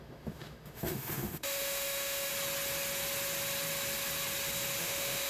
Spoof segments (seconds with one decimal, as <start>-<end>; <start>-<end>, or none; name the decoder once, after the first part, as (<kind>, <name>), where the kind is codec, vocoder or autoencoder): 0.0-2.3 (autoencoder, DAC-VAE); 4.8-5.3